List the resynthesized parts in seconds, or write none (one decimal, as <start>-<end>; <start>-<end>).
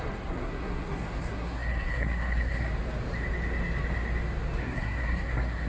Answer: 0.0-2.7; 4.6-5.7